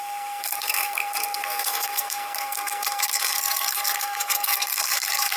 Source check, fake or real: fake